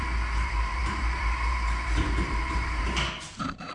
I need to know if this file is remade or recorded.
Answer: remade